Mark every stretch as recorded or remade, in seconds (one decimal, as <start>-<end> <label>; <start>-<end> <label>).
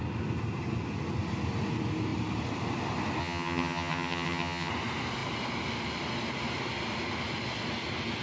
0.0-3.2 recorded; 3.2-4.7 remade; 4.7-8.2 recorded